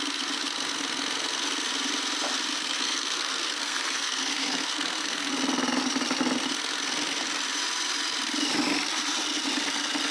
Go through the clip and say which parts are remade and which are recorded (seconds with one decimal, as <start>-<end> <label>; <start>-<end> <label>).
0.0-2.5 recorded; 2.5-5.3 remade; 5.3-10.1 recorded